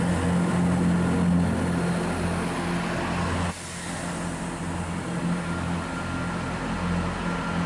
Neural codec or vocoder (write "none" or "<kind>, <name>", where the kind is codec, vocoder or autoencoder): none